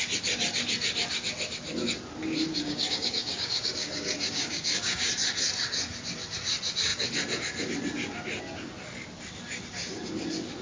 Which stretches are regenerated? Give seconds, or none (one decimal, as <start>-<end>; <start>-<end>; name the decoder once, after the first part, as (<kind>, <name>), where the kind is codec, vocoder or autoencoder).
2.5-5.1 (codec, DAC)